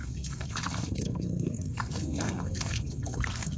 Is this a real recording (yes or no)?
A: no